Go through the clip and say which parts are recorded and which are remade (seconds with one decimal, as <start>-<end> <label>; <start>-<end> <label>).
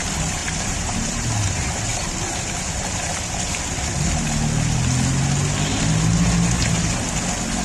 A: 0.0-0.4 recorded; 0.4-1.1 remade; 1.1-7.6 recorded